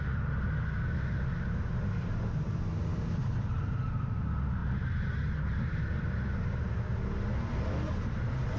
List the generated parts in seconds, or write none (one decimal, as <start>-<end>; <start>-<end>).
none